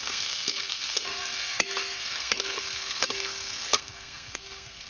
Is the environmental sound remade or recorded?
remade